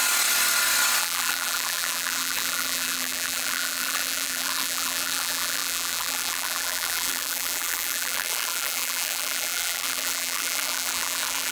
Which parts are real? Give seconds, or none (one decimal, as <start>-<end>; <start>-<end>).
0.0-1.0